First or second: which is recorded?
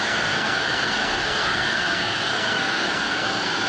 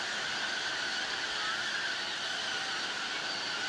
second